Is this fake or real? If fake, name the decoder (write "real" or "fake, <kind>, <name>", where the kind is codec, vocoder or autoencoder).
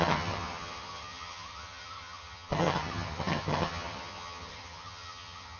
fake, vocoder, HiFi-GAN